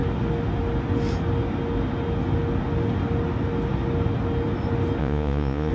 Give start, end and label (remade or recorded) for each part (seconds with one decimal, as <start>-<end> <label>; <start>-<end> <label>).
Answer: 0.0-5.0 recorded; 5.0-5.7 remade